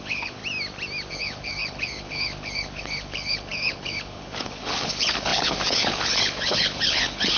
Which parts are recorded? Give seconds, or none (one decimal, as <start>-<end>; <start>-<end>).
0.4-1.1